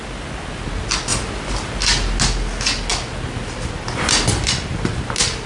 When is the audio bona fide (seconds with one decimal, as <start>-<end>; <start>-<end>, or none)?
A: 0.0-5.5